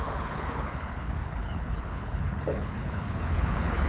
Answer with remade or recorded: remade